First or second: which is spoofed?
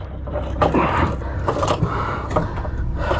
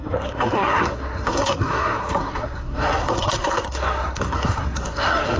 second